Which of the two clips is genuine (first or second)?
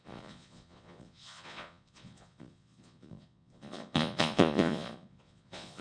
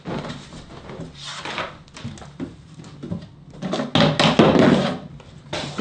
second